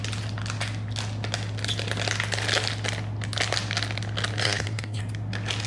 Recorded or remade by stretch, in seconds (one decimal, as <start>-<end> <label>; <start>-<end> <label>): 0.0-4.4 recorded; 4.4-5.0 remade; 5.0-5.7 recorded